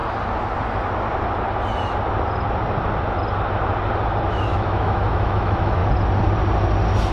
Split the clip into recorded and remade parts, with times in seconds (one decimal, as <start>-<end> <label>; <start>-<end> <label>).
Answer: 0.0-4.3 recorded; 4.3-5.8 remade; 5.8-7.1 recorded